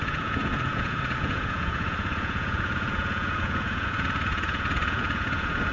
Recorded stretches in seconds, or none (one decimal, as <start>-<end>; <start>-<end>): none